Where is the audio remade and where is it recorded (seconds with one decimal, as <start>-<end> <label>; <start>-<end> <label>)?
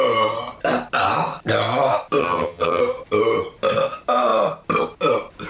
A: 0.0-2.2 recorded; 2.2-2.8 remade; 2.8-5.5 recorded